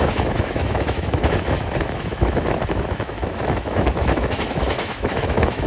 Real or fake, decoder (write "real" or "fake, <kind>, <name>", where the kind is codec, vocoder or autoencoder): fake, autoencoder, DAC-VAE